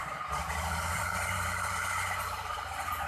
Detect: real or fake fake